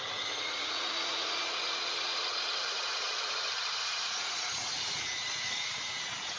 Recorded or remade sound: remade